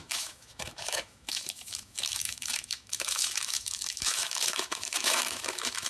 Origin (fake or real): fake